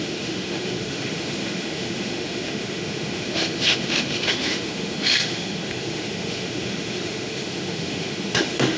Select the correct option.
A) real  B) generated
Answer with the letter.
B